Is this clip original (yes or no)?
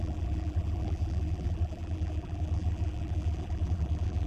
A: no